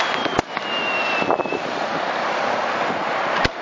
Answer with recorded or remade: recorded